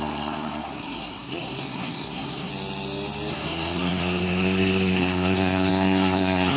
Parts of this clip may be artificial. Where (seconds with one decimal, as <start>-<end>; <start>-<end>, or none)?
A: 0.0-2.5; 3.3-6.6